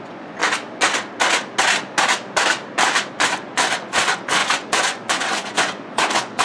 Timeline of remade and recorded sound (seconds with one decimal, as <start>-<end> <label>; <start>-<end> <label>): 0.0-0.4 remade; 0.4-3.1 recorded; 3.1-6.4 remade